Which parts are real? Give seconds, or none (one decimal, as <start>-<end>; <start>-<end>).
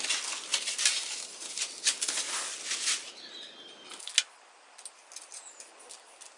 0.0-0.5; 1.9-6.4